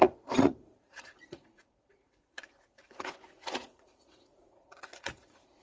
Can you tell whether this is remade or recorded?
remade